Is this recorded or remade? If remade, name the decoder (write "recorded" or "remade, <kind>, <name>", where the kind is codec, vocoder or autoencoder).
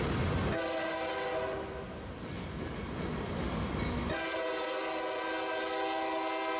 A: recorded